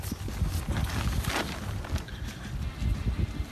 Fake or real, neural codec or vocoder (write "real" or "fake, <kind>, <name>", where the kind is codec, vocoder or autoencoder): real